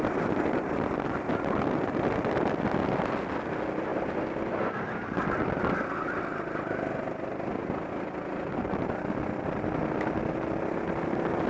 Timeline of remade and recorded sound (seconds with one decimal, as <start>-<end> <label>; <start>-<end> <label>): 0.0-11.5 recorded